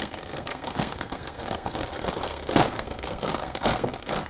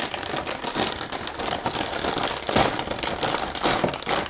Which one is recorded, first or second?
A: second